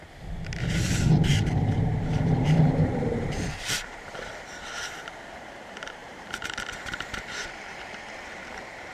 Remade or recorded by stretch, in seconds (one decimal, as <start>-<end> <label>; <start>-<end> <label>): 0.0-1.3 recorded; 1.3-4.3 remade; 4.3-6.0 recorded; 6.0-8.9 remade